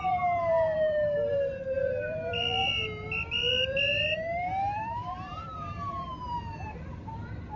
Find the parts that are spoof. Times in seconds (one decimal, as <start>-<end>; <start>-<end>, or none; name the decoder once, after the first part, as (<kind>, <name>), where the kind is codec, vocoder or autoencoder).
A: 0.0-2.6 (vocoder, BigVGAN v2); 3.5-7.6